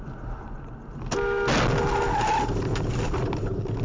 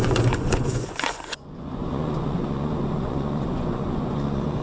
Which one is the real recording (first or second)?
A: first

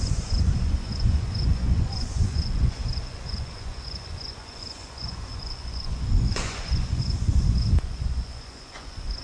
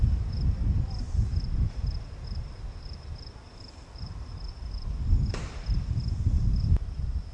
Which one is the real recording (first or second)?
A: second